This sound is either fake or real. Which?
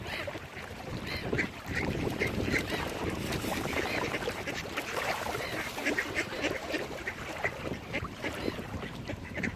fake